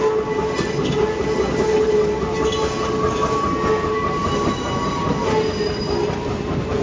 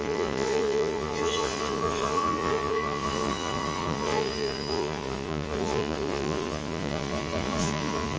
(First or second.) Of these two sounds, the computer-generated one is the second